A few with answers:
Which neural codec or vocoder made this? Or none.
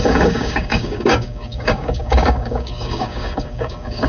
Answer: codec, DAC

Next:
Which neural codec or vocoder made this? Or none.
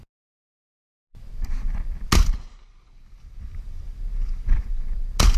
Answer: none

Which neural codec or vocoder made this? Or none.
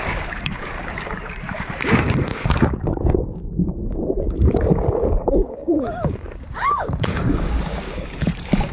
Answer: codec, DAC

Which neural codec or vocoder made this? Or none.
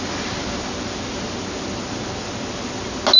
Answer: none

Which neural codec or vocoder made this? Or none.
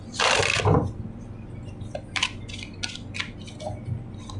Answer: none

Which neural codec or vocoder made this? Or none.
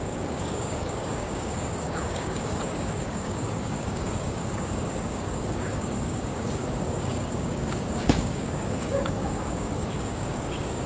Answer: codec, DAC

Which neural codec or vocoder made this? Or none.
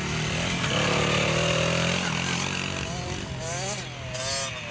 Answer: none